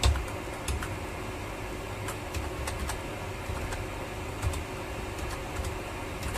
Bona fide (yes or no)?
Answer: yes